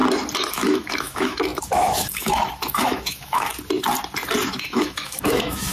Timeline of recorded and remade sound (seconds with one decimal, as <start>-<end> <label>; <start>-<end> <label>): 0.0-0.5 recorded; 0.5-3.5 remade; 3.5-4.5 recorded; 4.5-5.7 remade